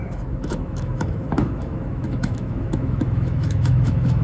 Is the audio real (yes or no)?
no